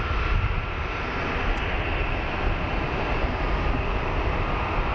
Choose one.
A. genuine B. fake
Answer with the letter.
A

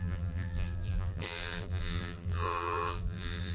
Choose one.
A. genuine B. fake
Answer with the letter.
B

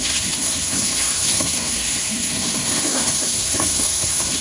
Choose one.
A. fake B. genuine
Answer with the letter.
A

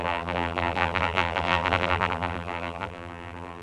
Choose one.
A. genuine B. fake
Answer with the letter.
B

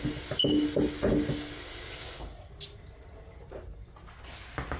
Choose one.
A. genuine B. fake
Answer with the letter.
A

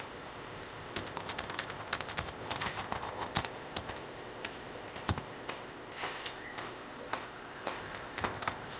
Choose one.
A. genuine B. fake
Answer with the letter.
B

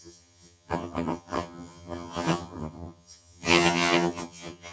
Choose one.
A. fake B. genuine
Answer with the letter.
A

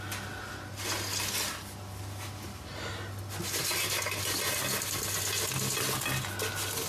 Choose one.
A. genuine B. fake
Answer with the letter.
A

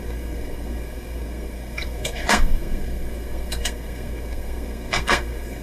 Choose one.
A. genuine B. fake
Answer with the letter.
B